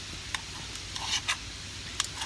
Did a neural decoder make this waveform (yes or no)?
no